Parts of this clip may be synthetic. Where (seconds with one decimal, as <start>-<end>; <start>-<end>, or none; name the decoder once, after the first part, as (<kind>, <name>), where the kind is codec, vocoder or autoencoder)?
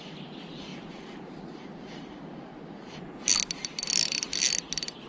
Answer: 0.0-0.7 (vocoder, BigVGAN v2); 2.2-3.3; 3.9-5.1